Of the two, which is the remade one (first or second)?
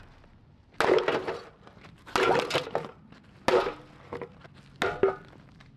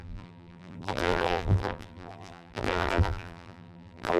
second